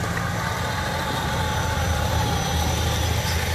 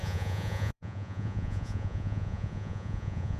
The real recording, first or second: first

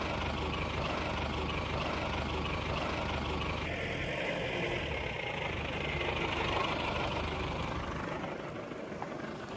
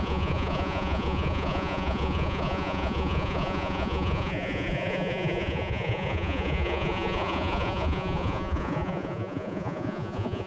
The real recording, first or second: first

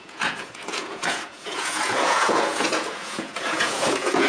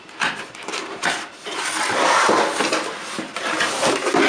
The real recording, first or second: second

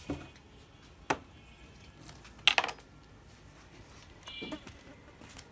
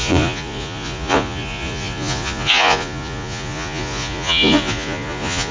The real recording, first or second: first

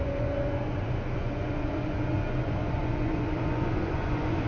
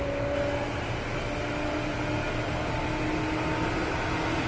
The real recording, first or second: second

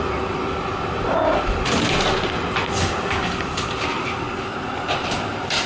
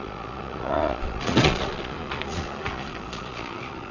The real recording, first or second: first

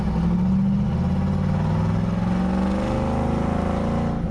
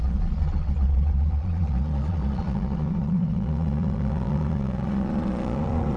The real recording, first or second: first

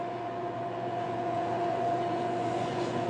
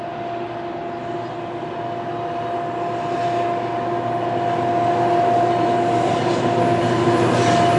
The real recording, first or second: second